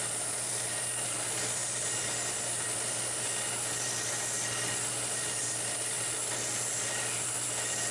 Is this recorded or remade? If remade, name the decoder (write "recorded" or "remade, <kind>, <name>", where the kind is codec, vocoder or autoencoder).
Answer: recorded